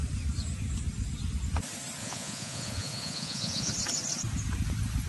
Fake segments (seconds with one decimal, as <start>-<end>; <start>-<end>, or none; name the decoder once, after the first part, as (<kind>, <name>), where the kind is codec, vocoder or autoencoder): 2.0-3.7 (vocoder, Vocos)